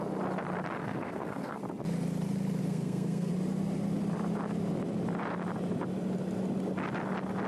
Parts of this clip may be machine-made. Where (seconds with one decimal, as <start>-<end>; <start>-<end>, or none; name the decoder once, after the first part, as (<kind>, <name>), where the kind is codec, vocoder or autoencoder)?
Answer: 0.8-1.6 (codec, SNAC); 2.6-3.3